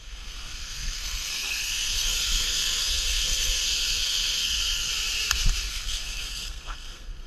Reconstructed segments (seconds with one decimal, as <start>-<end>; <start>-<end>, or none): 0.0-4.9; 5.7-7.3